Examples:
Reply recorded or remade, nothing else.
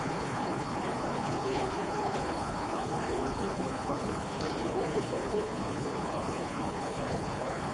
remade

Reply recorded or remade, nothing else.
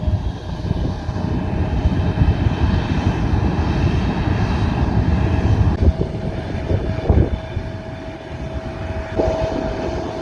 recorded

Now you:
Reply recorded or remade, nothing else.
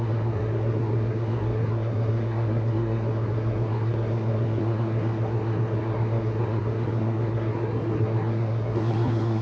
remade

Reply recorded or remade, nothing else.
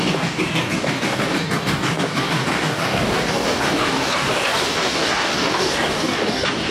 remade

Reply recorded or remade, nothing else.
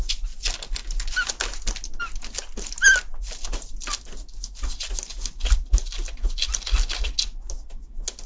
recorded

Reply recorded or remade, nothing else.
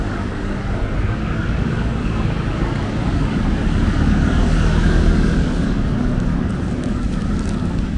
remade